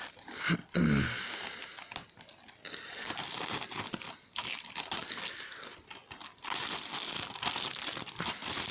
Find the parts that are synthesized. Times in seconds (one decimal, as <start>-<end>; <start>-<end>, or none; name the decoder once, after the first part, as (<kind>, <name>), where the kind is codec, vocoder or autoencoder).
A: none